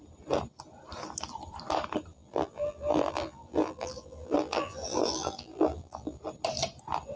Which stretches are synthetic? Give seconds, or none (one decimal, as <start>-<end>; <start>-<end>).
2.1-6.2

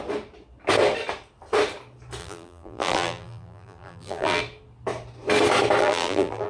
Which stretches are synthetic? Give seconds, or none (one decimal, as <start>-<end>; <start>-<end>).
2.2-4.4; 5.8-6.5

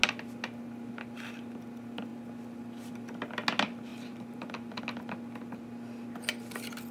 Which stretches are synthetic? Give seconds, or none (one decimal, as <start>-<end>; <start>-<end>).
3.9-4.8

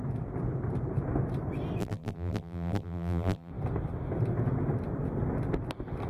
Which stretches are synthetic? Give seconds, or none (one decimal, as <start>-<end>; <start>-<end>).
1.8-3.5

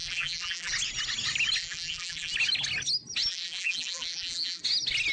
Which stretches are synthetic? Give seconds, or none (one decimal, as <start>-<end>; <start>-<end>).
0.0-0.7; 1.6-2.3; 3.3-4.6

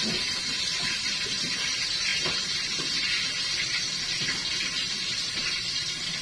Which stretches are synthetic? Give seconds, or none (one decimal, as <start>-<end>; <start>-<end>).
0.0-2.1; 4.9-6.2

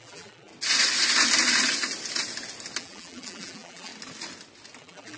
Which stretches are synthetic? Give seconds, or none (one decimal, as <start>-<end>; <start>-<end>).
0.0-0.5; 2.8-3.9; 4.8-5.2